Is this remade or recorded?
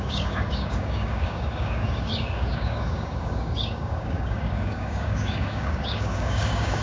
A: remade